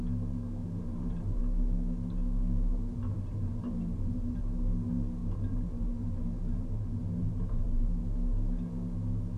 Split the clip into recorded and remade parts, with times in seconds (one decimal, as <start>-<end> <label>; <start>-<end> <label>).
0.0-0.6 recorded; 0.6-1.4 remade; 1.4-2.9 recorded; 2.9-4.4 remade; 4.4-5.2 recorded; 5.2-8.0 remade; 8.0-9.4 recorded